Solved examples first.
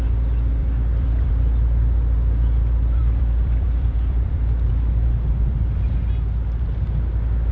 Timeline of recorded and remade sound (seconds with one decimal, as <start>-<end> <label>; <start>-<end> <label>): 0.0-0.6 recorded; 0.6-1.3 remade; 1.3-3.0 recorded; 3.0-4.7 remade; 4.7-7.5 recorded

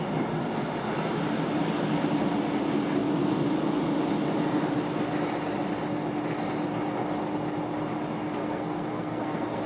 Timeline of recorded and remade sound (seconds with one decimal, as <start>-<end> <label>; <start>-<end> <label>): 0.0-8.4 recorded; 8.4-9.7 remade

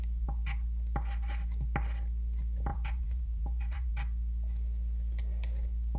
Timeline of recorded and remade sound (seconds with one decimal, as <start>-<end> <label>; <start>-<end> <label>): 0.0-2.7 recorded; 2.7-3.9 remade; 3.9-6.0 recorded

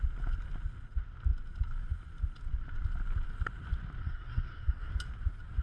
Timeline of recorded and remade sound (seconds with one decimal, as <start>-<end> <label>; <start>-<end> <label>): 0.0-4.0 recorded; 4.0-4.9 remade; 4.9-5.6 recorded